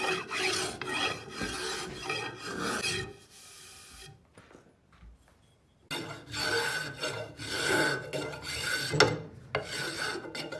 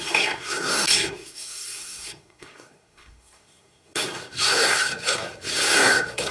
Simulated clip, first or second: second